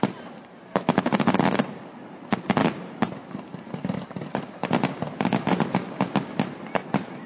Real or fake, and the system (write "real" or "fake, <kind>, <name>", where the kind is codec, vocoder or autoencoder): real